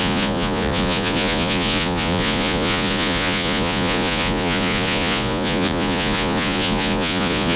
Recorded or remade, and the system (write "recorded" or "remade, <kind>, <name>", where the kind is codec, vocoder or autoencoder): remade, vocoder, Vocos